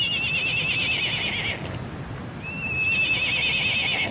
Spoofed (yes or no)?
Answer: no